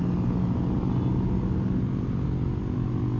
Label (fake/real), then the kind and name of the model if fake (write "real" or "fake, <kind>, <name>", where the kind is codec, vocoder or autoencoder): real